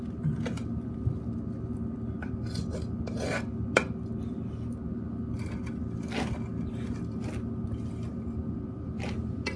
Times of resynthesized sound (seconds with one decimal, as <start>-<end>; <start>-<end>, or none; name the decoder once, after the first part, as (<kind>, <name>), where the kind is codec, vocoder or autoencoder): 8.1-9.6 (vocoder, BigVGAN v2)